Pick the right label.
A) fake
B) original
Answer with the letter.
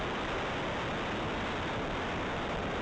B